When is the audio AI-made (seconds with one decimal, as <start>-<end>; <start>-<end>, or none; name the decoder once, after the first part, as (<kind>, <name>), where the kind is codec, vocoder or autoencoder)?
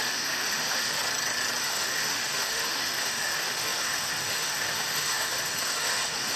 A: 0.0-1.0 (autoencoder, DAC-VAE); 1.6-6.4